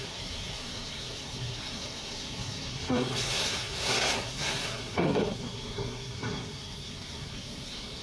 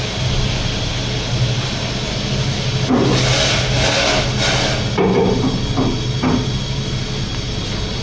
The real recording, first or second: second